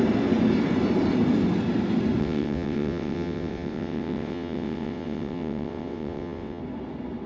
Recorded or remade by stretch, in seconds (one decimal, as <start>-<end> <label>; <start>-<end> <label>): 0.0-2.2 recorded; 2.2-6.6 remade; 6.6-7.3 recorded